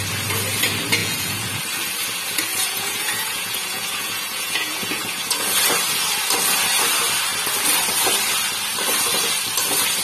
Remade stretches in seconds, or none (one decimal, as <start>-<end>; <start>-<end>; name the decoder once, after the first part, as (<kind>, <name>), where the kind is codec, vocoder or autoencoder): 1.0-1.6 (vocoder, Vocos); 2.5-5.6